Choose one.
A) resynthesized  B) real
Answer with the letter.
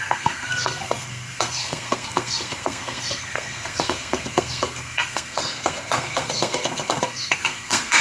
A